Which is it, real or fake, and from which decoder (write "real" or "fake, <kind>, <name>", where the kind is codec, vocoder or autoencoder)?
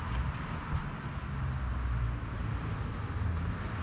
real